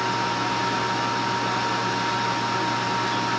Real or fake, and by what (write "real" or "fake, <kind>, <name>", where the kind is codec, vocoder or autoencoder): real